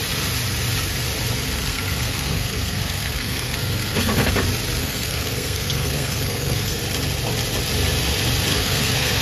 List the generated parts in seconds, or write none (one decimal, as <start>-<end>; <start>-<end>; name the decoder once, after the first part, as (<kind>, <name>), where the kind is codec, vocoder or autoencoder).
1.7-4.3 (codec, SNAC); 4.8-6.8; 8.5-9.2